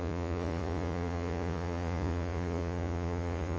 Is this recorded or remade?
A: remade